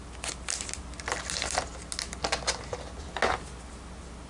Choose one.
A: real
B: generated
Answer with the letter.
A